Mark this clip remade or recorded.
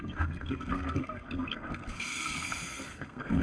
remade